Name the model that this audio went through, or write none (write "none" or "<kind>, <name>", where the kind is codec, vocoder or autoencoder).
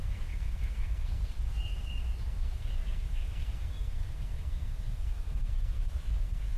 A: codec, SNAC